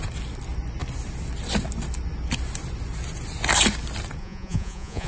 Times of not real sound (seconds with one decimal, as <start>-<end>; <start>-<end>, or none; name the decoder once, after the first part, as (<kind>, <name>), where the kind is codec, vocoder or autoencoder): 4.2-5.1 (vocoder, Vocos)